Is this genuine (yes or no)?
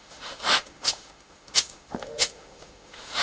no